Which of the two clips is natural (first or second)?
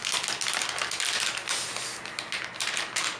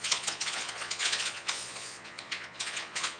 first